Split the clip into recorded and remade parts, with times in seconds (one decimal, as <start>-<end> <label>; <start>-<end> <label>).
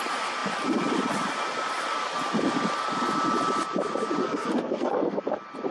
0.0-4.2 recorded; 4.2-5.2 remade; 5.2-5.7 recorded